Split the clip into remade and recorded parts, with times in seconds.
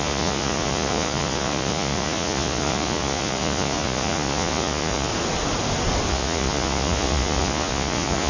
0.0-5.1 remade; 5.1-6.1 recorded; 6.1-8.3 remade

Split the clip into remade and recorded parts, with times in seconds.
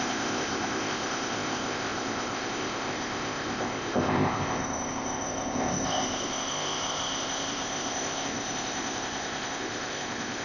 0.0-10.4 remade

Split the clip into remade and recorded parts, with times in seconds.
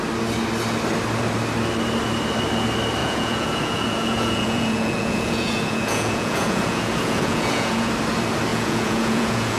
0.0-3.0 recorded; 3.0-7.9 remade; 7.9-8.5 recorded; 8.5-9.6 remade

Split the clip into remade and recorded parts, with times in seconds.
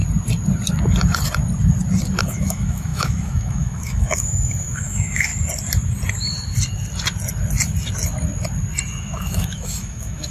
0.0-2.2 recorded; 2.2-5.3 remade; 5.3-9.0 recorded; 9.0-10.3 remade